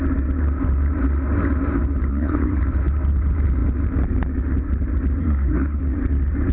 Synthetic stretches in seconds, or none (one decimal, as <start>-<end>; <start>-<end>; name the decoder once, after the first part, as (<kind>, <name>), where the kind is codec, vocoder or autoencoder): 2.1-2.6 (codec, SNAC); 5.2-5.8